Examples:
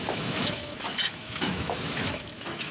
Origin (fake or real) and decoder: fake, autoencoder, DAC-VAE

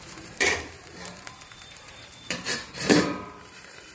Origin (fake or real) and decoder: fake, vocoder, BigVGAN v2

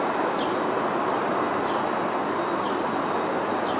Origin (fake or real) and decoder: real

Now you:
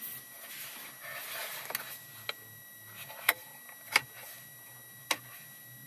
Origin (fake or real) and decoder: real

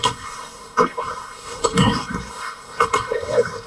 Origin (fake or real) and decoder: fake, codec, SNAC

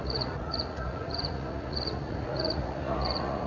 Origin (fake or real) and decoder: fake, vocoder, Vocos